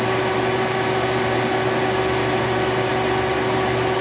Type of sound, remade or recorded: recorded